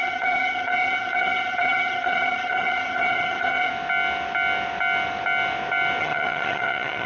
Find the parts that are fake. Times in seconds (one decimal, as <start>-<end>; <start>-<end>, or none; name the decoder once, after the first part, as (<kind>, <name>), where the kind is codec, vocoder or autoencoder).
0.0-3.7 (vocoder, HiFi-GAN); 6.0-7.1